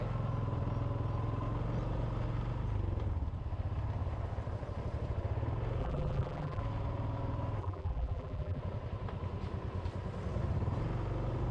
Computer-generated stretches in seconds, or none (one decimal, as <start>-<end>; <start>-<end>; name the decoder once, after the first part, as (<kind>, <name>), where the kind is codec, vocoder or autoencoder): 5.8-6.6 (vocoder, BigVGAN v2); 7.6-8.6